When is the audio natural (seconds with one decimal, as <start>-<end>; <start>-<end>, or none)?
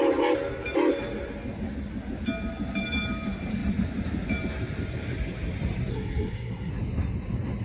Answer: 0.0-5.9; 6.7-7.6